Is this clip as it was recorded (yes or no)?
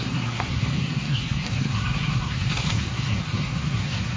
no